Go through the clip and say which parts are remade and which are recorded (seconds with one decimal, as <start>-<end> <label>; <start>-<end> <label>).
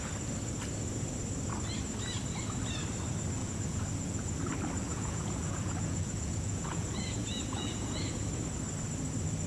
0.0-3.4 recorded; 3.4-4.4 remade; 4.4-4.9 recorded; 4.9-8.3 remade; 8.3-9.5 recorded